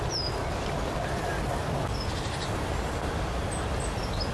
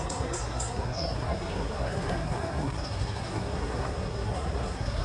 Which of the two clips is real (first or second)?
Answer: first